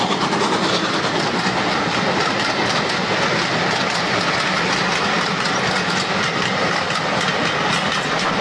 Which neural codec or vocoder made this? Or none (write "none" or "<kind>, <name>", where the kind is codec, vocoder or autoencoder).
none